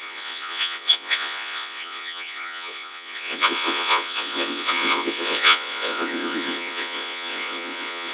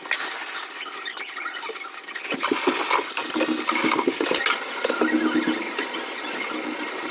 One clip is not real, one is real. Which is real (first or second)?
second